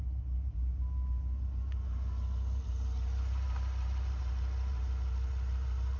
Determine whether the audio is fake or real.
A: real